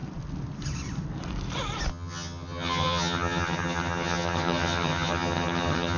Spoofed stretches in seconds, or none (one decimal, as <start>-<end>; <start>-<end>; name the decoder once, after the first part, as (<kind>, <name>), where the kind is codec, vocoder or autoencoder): 1.9-6.0 (vocoder, HiFi-GAN)